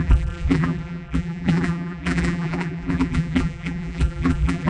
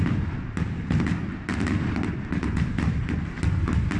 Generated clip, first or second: first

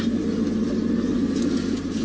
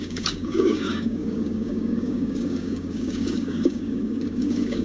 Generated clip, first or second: second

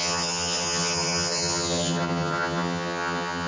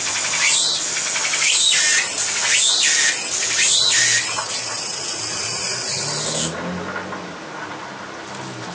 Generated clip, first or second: first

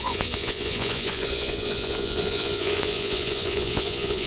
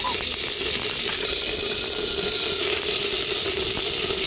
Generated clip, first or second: first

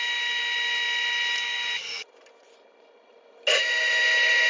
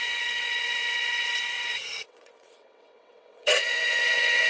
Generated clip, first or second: second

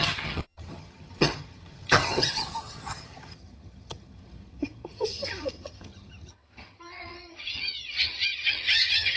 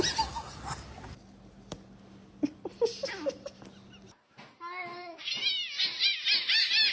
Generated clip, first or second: first